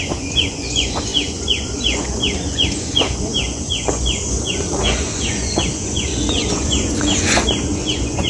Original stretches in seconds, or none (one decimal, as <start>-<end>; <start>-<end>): none